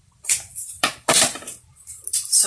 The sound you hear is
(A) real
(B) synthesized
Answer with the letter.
B